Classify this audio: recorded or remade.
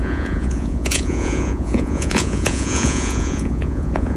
remade